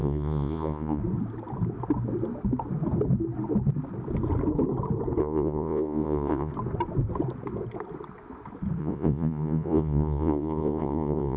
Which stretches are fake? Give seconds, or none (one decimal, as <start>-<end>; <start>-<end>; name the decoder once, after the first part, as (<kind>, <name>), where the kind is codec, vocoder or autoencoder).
0.0-1.0 (vocoder, Vocos); 5.2-6.5; 8.8-11.4